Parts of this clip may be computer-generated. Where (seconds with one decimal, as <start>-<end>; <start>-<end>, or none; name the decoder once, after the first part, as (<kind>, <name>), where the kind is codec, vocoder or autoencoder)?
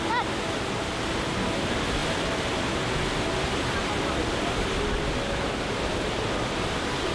none